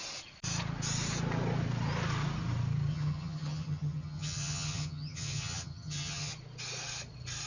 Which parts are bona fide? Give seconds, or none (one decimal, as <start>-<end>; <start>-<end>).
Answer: 0.0-2.9; 6.3-7.5